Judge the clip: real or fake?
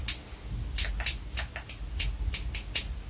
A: real